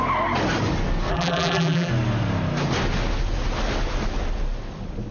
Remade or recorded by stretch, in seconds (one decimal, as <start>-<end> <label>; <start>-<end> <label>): 0.0-1.1 recorded; 1.1-1.9 remade; 1.9-5.1 recorded